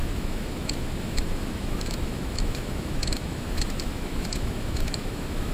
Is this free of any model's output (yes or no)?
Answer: no